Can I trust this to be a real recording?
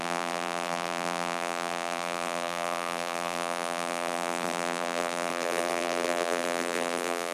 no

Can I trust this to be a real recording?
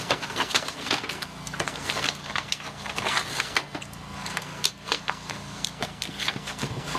no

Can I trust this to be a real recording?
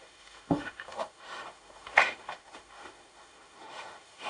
no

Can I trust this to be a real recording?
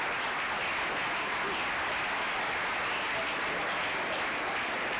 yes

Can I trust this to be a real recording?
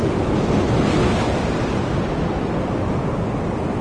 yes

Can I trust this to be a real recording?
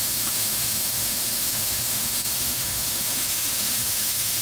no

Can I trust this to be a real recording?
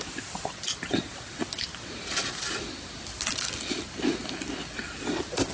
yes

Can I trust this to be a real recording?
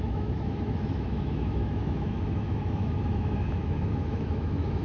no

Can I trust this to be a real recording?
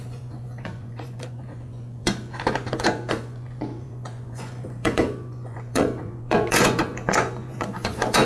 no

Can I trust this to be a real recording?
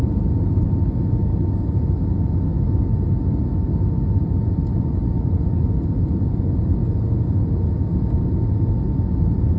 yes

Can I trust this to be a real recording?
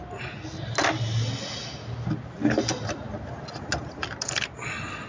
yes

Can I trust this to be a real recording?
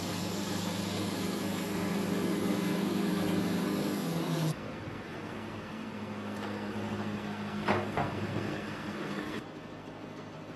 no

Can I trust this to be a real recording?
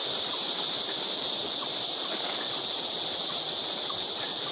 yes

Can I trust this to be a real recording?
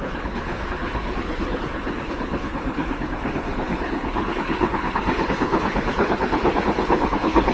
no